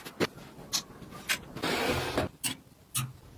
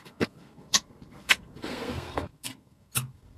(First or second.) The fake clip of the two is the second